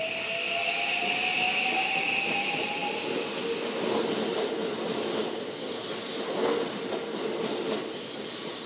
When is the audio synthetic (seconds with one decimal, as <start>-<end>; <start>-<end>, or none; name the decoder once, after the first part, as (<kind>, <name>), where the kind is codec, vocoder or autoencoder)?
none